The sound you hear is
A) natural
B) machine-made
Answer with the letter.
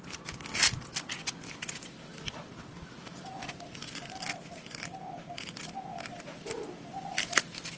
A